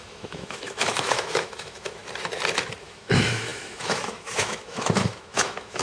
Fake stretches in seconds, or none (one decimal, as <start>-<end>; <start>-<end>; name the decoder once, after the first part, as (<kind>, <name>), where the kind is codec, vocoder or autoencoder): 0.0-2.0 (autoencoder, DAC-VAE); 2.8-5.8